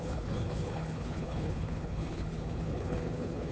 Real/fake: fake